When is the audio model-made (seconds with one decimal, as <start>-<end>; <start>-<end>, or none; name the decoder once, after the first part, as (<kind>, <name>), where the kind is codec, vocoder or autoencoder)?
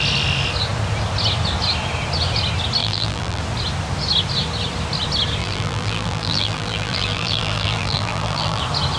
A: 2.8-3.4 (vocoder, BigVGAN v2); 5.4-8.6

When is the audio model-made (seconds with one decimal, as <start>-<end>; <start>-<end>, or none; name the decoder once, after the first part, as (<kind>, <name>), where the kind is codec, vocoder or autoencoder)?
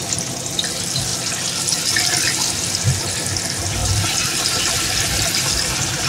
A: 3.8-4.8 (vocoder, BigVGAN v2)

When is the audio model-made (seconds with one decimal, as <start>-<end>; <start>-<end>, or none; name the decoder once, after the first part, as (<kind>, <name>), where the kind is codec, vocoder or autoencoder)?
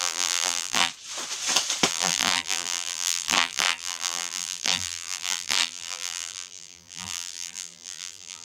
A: 0.0-0.9 (vocoder, BigVGAN v2); 1.9-8.4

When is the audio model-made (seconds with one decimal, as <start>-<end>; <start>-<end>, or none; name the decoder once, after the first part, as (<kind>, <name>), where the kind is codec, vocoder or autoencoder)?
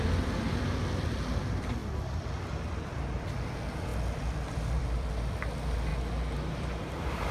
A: 0.0-3.9 (vocoder, BigVGAN v2); 4.5-5.9; 6.5-7.3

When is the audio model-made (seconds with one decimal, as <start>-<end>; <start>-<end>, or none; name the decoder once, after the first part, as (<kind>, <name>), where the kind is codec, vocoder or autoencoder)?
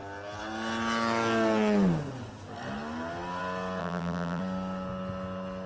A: 3.8-4.4 (vocoder, BigVGAN v2)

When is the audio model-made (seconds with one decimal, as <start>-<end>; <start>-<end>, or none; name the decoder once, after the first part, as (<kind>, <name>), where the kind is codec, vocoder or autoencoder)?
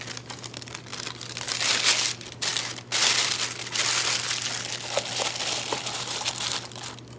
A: 5.7-6.3 (vocoder, BigVGAN v2)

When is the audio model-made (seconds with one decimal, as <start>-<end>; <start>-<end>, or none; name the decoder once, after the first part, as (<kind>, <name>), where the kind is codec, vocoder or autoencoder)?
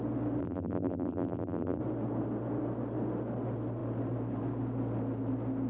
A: 0.4-1.8 (vocoder, BigVGAN v2)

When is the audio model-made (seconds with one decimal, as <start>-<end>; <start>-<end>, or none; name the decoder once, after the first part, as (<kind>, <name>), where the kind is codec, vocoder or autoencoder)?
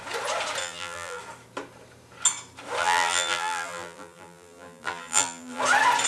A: 0.6-1.2 (vocoder, BigVGAN v2); 2.8-5.6